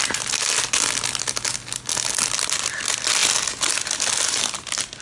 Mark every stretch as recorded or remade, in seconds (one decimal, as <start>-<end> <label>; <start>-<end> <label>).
0.0-5.0 recorded